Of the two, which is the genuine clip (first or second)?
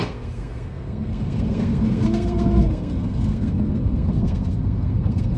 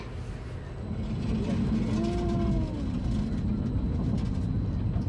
second